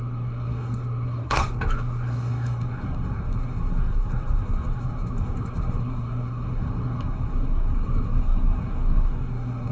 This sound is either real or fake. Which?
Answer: fake